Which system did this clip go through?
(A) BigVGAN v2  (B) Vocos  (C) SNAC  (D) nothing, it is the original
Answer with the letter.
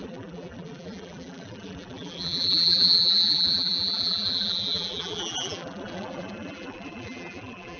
A